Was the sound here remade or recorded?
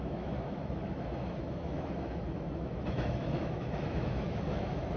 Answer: remade